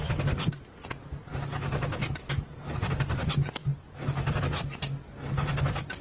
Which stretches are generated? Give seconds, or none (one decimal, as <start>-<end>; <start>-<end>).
none